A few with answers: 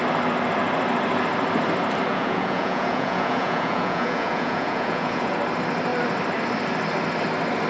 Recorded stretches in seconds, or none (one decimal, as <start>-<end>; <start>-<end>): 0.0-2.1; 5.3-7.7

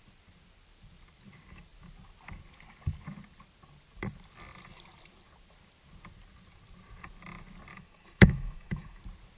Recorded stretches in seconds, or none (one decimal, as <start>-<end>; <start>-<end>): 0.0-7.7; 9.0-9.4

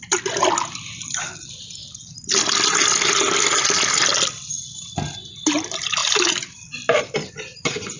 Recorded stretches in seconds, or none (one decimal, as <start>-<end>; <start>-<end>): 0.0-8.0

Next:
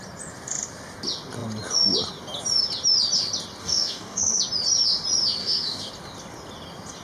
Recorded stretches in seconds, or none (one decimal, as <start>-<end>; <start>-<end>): 0.0-3.6; 4.4-5.4; 5.9-7.0

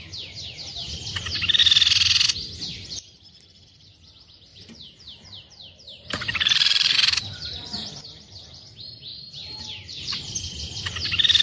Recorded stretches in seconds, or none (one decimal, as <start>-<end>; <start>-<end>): 0.0-4.5; 7.9-9.1; 10.2-11.4

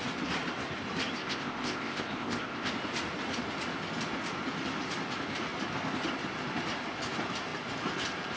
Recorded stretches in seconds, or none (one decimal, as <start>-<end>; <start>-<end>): 0.0-1.2; 2.7-8.4

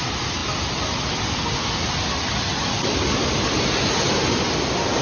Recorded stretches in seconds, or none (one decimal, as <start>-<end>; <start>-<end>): 0.0-5.0